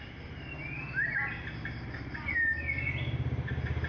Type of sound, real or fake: real